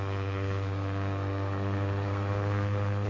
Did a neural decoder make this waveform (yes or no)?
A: yes